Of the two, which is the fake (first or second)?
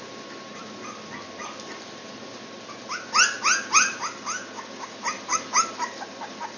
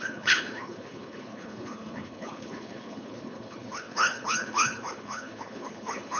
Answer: second